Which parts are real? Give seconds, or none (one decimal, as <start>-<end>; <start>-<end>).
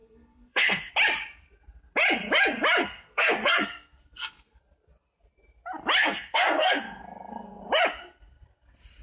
0.9-2.8; 4.6-6.0; 7.6-9.0